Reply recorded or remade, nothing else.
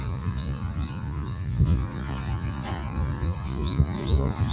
remade